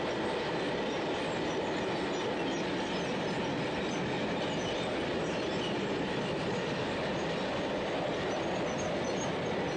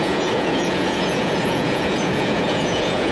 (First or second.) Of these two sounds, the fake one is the second